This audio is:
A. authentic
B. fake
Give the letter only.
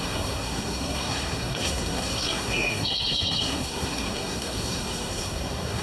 B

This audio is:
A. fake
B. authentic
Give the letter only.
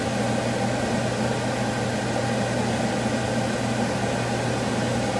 B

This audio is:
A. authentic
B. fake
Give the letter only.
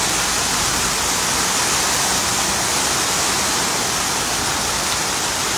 A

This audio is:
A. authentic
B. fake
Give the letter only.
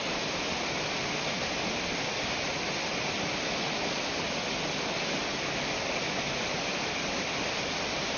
A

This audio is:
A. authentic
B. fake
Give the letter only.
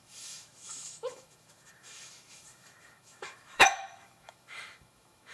B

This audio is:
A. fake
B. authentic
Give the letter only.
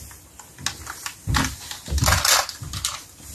B